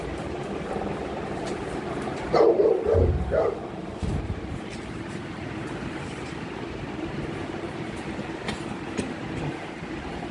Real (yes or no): no